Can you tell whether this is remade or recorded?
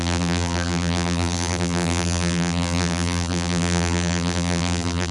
remade